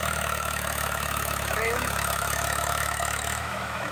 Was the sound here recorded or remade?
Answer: remade